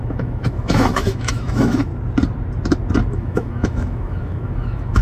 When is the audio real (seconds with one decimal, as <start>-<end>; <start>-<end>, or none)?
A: 1.9-3.1

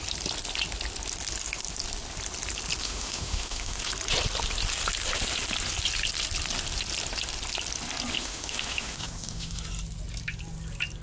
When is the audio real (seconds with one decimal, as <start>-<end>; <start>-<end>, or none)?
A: 0.0-2.8; 3.9-8.1; 9.6-11.0

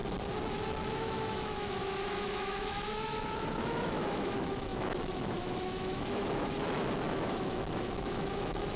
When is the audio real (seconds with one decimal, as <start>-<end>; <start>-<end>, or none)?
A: 0.0-0.9

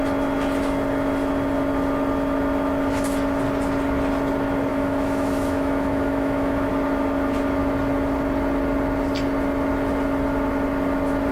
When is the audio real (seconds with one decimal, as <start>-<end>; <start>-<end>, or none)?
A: 0.0-4.7; 6.7-11.3

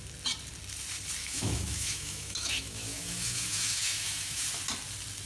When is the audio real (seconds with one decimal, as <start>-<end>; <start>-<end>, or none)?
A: 0.0-1.2; 4.4-5.3

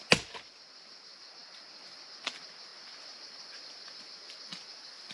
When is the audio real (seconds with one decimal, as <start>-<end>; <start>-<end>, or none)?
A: 0.0-5.1

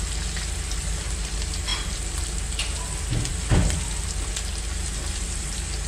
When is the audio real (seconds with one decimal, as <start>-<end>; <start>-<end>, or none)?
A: 0.0-5.9

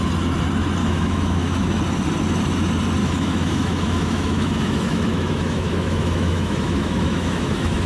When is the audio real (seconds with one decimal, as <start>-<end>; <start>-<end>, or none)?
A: 0.0-0.8; 1.8-3.0